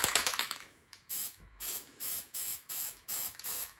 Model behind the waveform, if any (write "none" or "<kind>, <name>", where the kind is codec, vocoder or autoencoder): autoencoder, DAC-VAE